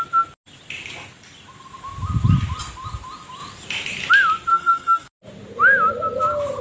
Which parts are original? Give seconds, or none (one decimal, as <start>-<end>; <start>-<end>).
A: 0.0-4.5; 5.1-6.6